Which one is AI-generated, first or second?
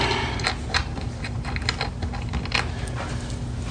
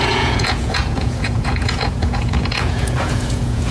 second